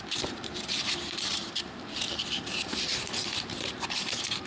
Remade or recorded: remade